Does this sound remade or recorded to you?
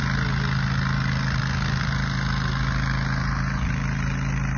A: recorded